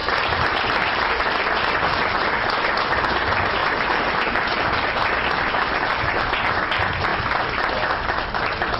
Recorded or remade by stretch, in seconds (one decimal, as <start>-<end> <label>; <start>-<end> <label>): 0.0-0.8 remade; 0.8-3.6 recorded; 3.6-4.6 remade; 4.6-8.8 recorded